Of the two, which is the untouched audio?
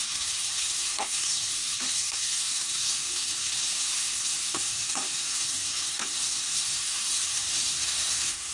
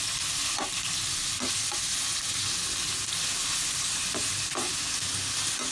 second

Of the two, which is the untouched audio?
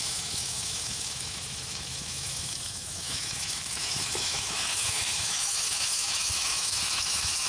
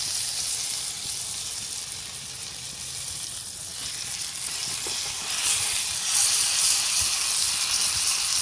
second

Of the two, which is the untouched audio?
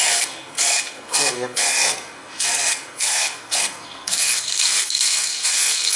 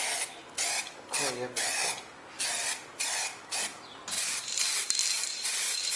second